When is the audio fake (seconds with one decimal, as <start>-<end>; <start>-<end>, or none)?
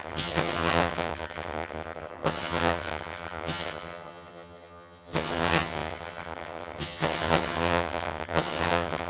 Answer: 0.0-9.1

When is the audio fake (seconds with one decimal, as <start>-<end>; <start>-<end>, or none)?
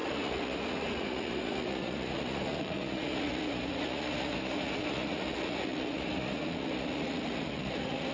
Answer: 0.0-8.1